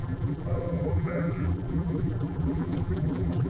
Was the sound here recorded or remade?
remade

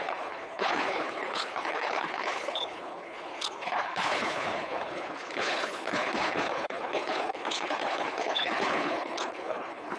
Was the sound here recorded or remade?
remade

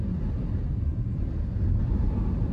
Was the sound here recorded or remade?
recorded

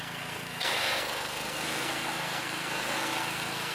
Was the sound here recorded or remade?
remade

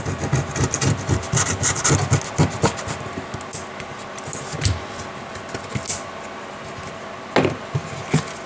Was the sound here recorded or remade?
recorded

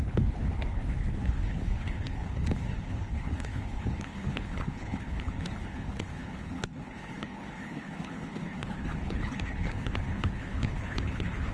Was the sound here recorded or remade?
remade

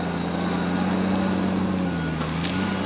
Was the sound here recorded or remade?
recorded